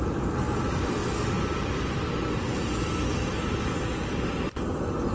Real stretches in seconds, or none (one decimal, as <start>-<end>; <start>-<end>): 0.0-5.1